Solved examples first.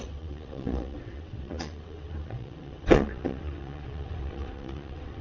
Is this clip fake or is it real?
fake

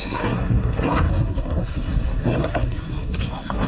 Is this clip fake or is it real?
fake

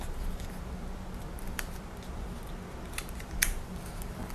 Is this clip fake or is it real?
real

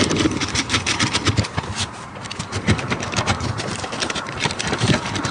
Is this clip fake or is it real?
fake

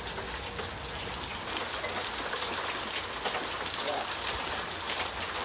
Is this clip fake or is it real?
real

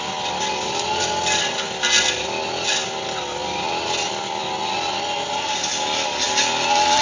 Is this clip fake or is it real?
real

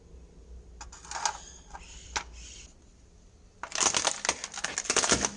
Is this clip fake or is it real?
real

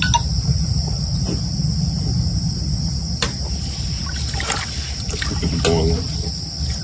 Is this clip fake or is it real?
real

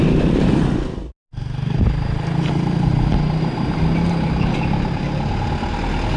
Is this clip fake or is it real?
real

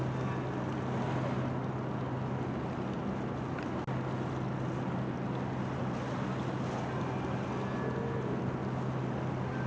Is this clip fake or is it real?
real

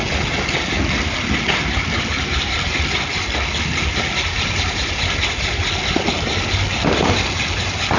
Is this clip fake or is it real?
real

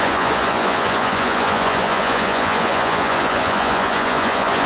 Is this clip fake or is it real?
fake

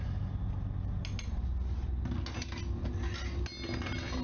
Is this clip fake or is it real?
real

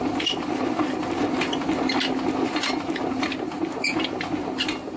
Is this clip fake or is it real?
real